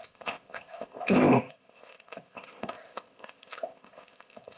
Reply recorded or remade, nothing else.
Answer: remade